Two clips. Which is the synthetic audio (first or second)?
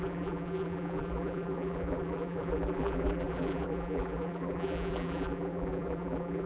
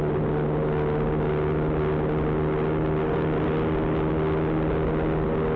first